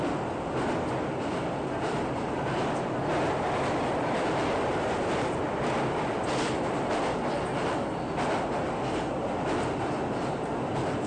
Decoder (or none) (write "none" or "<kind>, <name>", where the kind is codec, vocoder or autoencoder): none